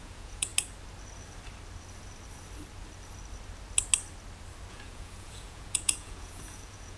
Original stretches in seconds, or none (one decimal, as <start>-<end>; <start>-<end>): 0.5-4.7